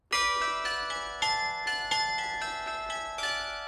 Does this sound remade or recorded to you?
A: recorded